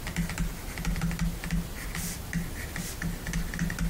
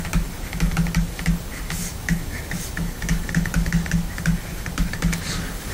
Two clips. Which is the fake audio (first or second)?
second